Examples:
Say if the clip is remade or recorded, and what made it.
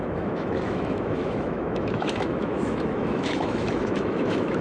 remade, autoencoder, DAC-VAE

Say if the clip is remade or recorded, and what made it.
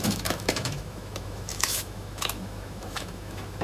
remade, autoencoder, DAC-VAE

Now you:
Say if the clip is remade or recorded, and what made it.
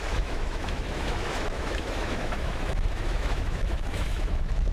remade, autoencoder, DAC-VAE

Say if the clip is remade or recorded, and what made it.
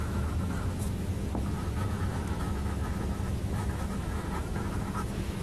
remade, autoencoder, DAC-VAE